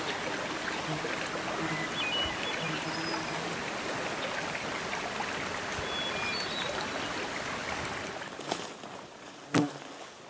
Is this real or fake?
real